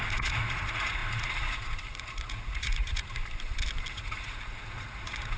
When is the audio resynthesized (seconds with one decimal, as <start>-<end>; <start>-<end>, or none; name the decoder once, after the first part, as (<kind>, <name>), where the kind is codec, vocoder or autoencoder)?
0.0-3.2 (vocoder, Vocos); 3.9-5.4